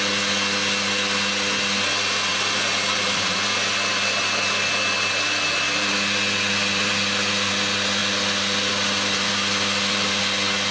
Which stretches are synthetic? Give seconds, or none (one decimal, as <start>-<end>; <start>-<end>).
2.3-7.5; 8.0-10.2